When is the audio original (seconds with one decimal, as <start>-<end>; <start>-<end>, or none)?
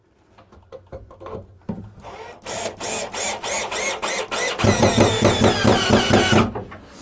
0.0-7.0